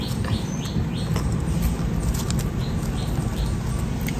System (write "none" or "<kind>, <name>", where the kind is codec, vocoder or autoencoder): none